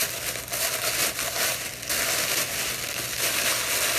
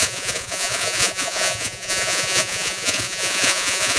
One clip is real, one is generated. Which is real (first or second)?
first